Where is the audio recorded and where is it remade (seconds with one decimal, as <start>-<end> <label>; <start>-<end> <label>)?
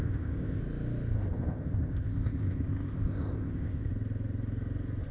0.0-0.6 remade; 0.6-1.4 recorded; 1.4-3.9 remade; 3.9-5.1 recorded